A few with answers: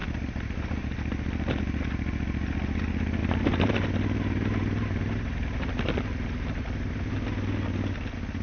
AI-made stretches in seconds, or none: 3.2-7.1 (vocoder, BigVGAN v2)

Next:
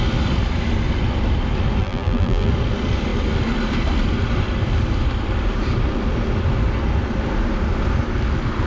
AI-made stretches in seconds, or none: 1.8-2.5 (vocoder, BigVGAN v2)